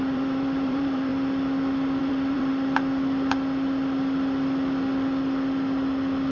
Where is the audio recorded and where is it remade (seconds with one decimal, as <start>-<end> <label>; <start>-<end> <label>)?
0.0-1.1 remade; 1.1-2.0 recorded; 2.0-2.5 remade; 2.5-6.3 recorded